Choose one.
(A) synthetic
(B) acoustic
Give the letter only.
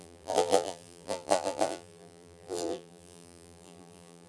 A